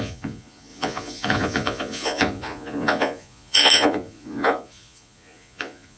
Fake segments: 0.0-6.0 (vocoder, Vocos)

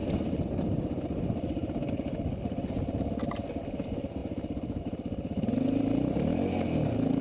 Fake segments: none

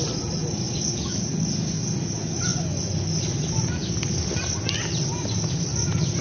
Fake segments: none

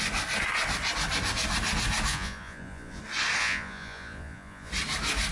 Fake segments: 2.1-3.0 (vocoder, Vocos); 3.4-4.7